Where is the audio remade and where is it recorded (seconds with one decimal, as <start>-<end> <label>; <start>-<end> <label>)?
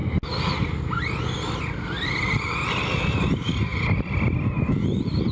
0.0-5.3 recorded